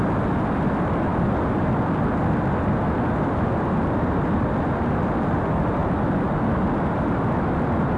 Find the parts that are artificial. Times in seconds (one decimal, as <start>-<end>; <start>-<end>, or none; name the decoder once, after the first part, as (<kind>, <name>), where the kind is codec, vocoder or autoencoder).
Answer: none